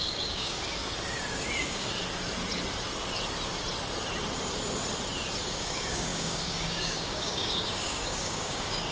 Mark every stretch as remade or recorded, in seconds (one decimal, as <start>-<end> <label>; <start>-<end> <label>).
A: 0.0-0.8 remade; 0.8-1.6 recorded; 1.6-2.0 remade; 2.0-5.4 recorded; 5.4-8.9 remade